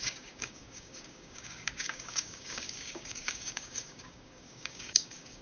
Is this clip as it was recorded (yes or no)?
no